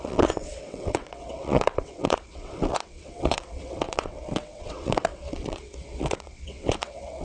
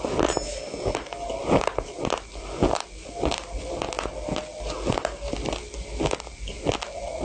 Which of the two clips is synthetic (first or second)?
first